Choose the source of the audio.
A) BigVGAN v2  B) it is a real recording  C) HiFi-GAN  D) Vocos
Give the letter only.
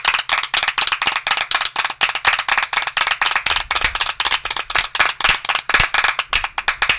B